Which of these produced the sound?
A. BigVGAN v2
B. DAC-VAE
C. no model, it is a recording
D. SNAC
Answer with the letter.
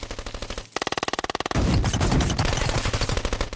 C